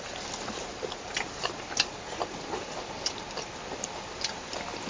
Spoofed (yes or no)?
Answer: no